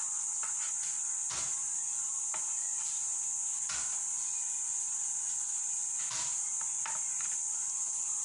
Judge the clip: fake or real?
real